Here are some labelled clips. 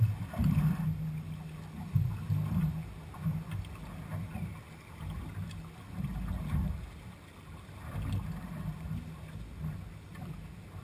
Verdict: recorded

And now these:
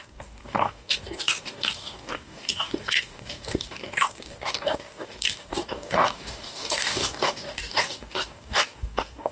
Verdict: remade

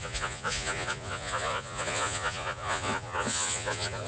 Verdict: remade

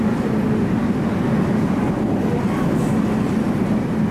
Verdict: recorded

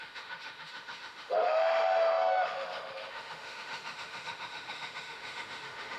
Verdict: remade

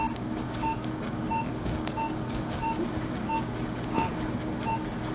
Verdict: remade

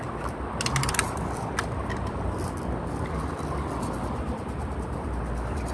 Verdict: recorded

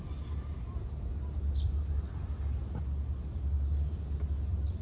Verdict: recorded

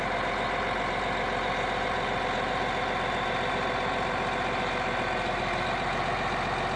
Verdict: recorded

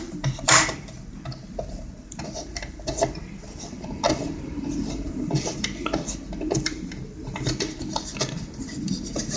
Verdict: remade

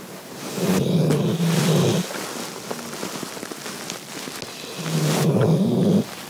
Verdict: recorded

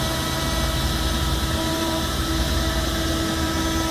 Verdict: remade